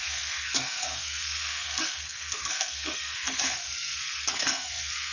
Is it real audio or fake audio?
fake